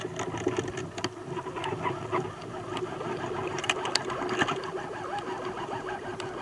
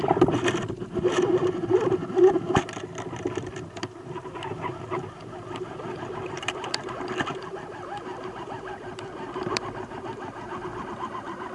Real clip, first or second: first